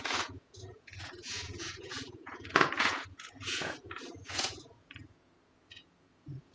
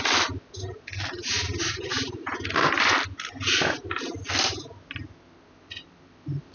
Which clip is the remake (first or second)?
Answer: first